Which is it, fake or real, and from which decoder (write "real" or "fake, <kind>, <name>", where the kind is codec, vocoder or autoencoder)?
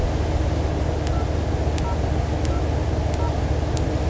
real